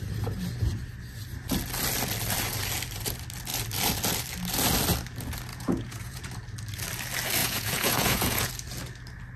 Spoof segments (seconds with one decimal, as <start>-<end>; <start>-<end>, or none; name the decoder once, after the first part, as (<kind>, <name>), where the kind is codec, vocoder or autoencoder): 5.5-6.3 (vocoder, Vocos); 7.4-8.5